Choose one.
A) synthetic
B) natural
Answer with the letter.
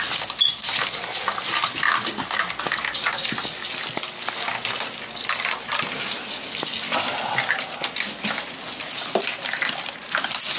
B